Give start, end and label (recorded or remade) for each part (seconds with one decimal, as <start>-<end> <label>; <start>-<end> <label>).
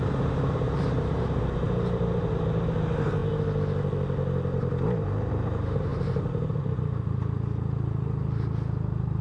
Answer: 0.0-3.2 remade; 3.2-5.3 recorded; 5.3-9.2 remade